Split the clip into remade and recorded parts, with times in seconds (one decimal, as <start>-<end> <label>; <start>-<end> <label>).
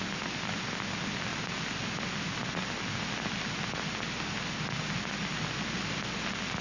0.0-6.6 recorded